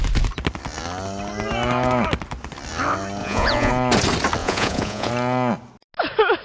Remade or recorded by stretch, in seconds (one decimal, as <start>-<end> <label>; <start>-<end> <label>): 0.0-3.2 recorded; 3.2-3.7 remade; 3.7-4.4 recorded; 4.4-5.1 remade; 5.1-6.4 recorded